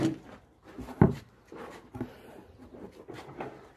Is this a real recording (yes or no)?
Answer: yes